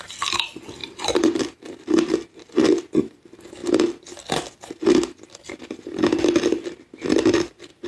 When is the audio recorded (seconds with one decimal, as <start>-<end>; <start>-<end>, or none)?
0.0-0.8; 1.6-7.9